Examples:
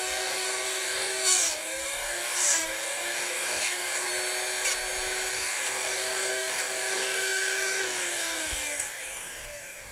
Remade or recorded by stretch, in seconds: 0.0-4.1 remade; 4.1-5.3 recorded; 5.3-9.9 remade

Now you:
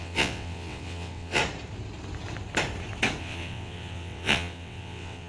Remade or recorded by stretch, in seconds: 0.0-1.4 remade; 1.4-3.2 recorded; 3.2-5.3 remade

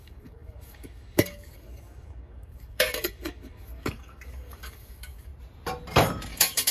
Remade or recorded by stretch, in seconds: 0.0-5.3 remade; 5.3-6.3 recorded; 6.3-6.7 remade

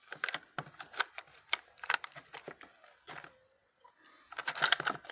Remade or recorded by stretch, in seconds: 0.0-5.1 recorded

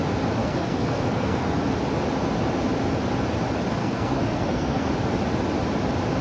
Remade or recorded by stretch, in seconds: 0.0-0.4 recorded; 0.4-1.6 remade; 1.6-3.8 recorded; 3.8-4.9 remade; 4.9-6.2 recorded

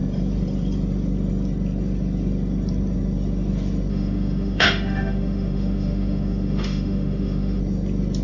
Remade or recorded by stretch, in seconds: 0.0-3.9 recorded; 3.9-7.6 remade; 7.6-8.2 recorded

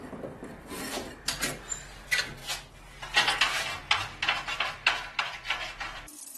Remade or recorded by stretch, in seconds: 0.0-6.4 recorded

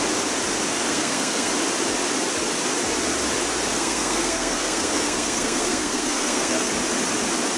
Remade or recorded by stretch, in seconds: 0.0-0.9 recorded; 0.9-1.5 remade; 1.5-3.7 recorded; 3.7-6.7 remade; 6.7-7.6 recorded